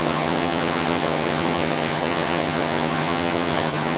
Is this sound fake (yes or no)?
yes